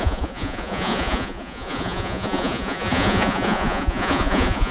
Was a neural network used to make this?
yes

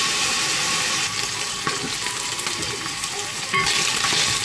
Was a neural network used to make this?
no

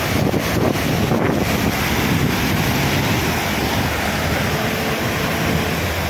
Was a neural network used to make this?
no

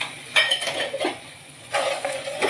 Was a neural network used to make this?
yes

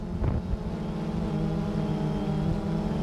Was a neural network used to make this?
no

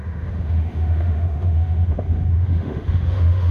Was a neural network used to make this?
yes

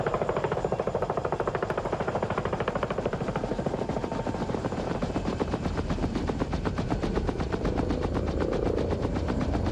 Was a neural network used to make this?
yes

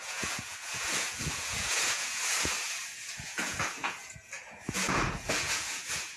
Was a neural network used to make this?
yes